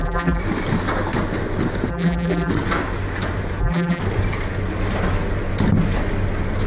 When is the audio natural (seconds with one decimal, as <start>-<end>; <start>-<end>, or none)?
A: 0.4-1.9; 2.5-3.6; 4.0-6.7